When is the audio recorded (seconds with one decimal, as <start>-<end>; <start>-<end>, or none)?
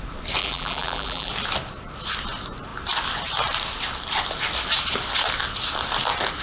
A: 0.0-0.4; 1.3-6.4